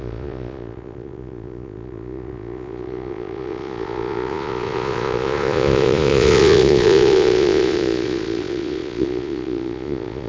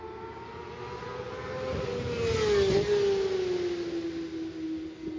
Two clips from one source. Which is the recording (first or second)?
second